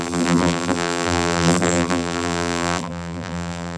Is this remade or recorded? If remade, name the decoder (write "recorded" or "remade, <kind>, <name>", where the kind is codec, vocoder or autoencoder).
remade, vocoder, BigVGAN v2